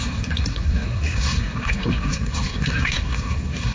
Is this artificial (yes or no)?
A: yes